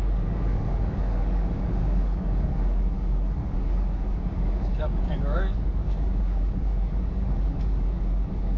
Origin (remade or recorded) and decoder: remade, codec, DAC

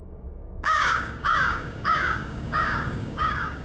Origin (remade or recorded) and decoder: remade, codec, DAC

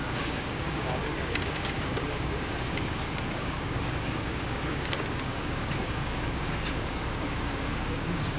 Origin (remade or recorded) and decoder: remade, codec, DAC